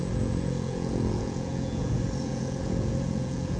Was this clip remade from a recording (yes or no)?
yes